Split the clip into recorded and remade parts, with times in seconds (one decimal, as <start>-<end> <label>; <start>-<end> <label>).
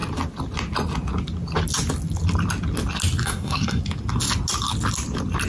0.0-3.2 recorded; 3.2-3.8 remade; 3.8-5.5 recorded